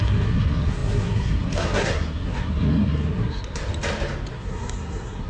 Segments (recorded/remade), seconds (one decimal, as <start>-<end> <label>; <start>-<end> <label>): 0.0-3.6 remade; 3.6-4.3 recorded; 4.3-5.3 remade